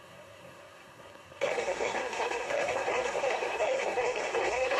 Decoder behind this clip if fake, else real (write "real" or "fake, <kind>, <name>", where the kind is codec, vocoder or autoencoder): fake, codec, SNAC